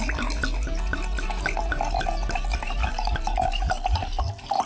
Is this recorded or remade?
recorded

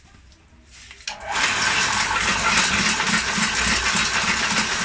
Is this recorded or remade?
recorded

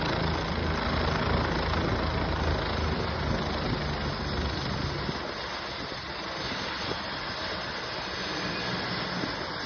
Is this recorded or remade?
recorded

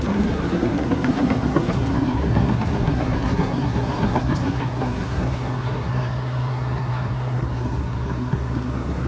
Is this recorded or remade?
remade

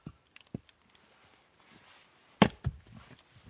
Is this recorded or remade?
recorded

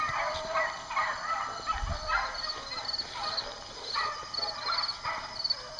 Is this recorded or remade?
recorded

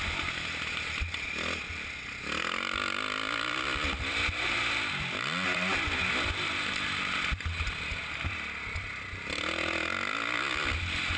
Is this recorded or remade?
recorded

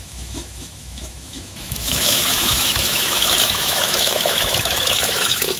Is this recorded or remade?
remade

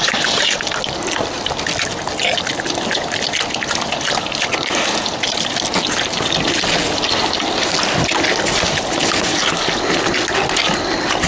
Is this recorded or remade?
recorded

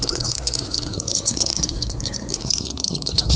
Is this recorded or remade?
remade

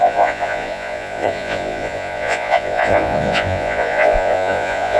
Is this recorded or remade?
remade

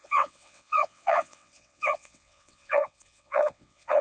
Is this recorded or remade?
remade